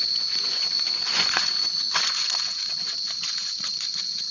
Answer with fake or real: fake